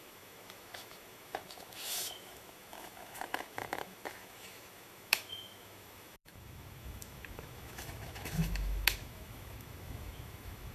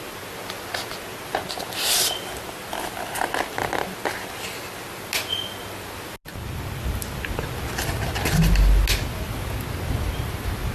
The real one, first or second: second